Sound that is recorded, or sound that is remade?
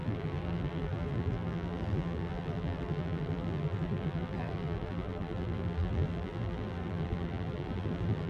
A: remade